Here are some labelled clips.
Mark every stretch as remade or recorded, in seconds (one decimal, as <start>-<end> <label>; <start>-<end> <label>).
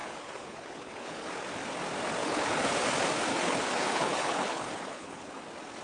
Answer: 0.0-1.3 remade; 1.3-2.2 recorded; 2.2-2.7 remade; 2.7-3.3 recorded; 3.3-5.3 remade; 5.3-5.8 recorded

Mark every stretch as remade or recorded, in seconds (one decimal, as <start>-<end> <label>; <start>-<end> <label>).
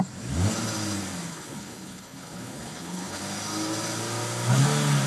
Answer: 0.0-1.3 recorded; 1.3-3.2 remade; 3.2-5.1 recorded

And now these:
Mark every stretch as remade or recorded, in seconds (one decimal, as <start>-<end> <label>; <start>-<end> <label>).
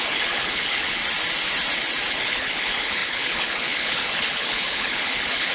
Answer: 0.0-1.0 remade; 1.0-2.1 recorded; 2.1-5.5 remade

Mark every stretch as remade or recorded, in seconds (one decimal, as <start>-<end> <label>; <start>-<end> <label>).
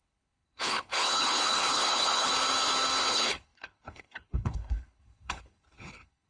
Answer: 0.0-2.3 remade; 2.3-3.1 recorded; 3.1-6.3 remade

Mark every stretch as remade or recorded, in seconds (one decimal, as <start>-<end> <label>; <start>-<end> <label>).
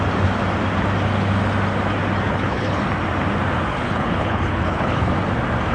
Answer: 0.0-2.3 recorded; 2.3-2.8 remade; 2.8-3.7 recorded; 3.7-5.1 remade; 5.1-5.7 recorded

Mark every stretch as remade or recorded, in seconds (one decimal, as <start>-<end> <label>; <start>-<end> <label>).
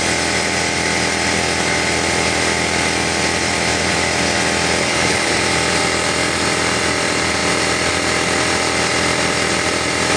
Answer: 0.0-4.8 recorded; 4.8-5.4 remade; 5.4-10.2 recorded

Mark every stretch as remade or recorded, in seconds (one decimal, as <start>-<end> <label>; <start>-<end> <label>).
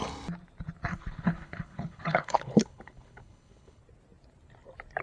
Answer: 0.0-0.9 recorded; 0.9-3.8 remade; 3.8-5.0 recorded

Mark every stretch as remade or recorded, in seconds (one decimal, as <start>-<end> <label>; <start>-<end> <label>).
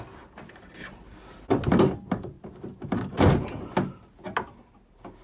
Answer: 0.0-5.2 recorded